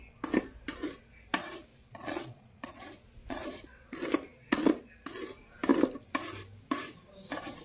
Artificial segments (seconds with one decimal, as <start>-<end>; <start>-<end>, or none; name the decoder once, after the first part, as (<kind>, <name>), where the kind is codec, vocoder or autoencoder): 1.7-4.9 (vocoder, Vocos)